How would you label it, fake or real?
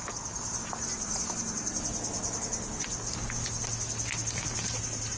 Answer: real